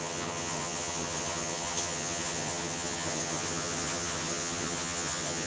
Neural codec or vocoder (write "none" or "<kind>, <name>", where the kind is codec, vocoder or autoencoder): vocoder, HiFi-GAN